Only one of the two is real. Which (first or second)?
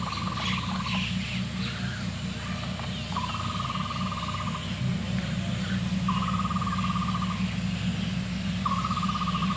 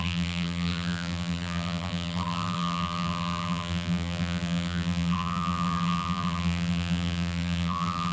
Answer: first